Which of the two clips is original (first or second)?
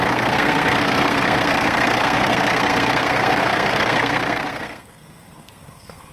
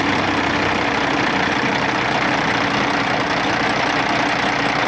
second